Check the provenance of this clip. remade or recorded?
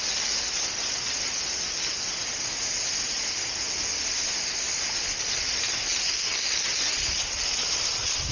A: recorded